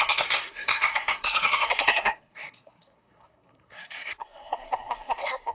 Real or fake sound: fake